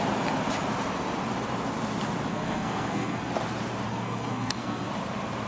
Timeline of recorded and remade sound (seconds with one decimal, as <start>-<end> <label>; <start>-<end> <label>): 0.0-2.3 recorded; 2.3-3.3 remade; 3.3-3.9 recorded; 3.9-4.9 remade; 4.9-5.5 recorded

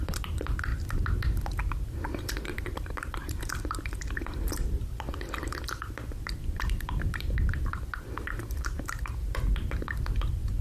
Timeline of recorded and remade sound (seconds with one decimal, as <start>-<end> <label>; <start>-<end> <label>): 0.0-0.7 remade; 0.7-1.7 recorded; 1.7-10.6 remade

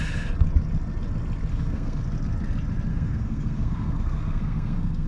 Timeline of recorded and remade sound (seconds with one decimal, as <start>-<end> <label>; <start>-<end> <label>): 0.0-1.5 recorded; 1.5-2.0 remade; 2.0-2.9 recorded; 2.9-5.1 remade

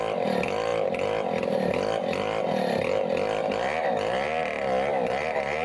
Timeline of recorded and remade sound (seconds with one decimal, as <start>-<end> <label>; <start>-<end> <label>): 0.0-5.6 recorded

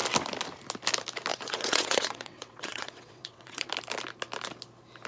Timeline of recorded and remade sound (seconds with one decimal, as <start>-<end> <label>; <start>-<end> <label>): 0.0-1.3 recorded; 1.3-3.7 remade; 3.7-5.1 recorded